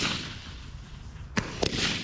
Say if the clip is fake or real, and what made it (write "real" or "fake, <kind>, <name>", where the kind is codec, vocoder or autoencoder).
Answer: fake, vocoder, BigVGAN v2